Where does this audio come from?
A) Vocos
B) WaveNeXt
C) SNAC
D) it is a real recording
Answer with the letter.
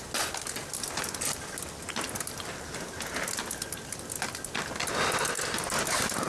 D